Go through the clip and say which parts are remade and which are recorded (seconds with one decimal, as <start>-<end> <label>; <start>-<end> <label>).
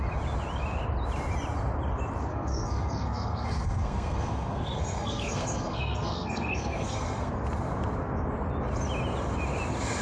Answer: 0.0-2.3 recorded; 2.3-7.3 remade; 7.3-10.0 recorded